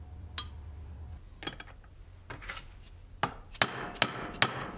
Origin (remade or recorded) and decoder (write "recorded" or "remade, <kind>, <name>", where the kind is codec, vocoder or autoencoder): recorded